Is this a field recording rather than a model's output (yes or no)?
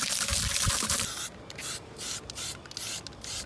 yes